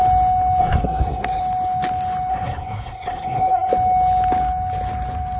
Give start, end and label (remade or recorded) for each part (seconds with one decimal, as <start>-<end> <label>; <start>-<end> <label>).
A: 0.0-0.6 recorded; 0.6-1.4 remade; 1.4-2.3 recorded; 2.3-3.7 remade; 3.7-5.4 recorded